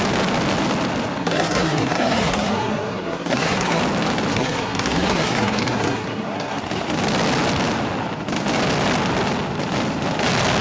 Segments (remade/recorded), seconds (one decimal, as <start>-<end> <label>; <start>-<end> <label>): 0.0-1.2 recorded; 1.2-3.8 remade; 3.8-4.3 recorded; 4.3-6.6 remade; 6.6-10.6 recorded